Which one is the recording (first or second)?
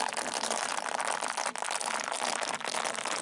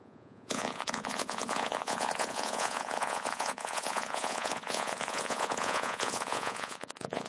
first